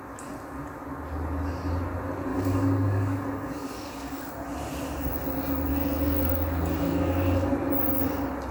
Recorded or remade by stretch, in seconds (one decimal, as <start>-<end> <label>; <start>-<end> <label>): 0.0-2.3 recorded; 2.3-4.3 remade; 4.3-5.7 recorded; 5.7-7.5 remade; 7.5-8.5 recorded